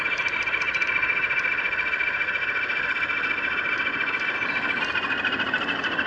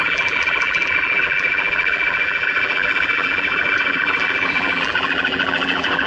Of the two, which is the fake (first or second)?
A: second